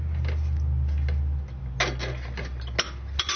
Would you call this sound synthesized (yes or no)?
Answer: no